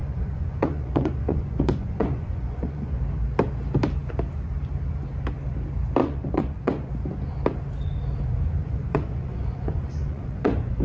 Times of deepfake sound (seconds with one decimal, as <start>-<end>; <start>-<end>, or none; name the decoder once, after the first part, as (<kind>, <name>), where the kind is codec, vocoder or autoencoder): 0.0-3.0 (vocoder, Vocos); 6.0-6.9; 8.6-10.8